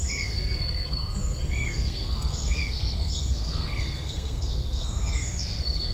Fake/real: fake